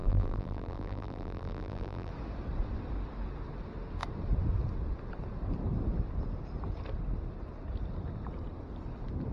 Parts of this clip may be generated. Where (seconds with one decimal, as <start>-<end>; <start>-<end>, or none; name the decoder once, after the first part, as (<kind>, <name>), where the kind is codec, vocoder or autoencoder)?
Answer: 0.0-2.1 (vocoder, BigVGAN v2)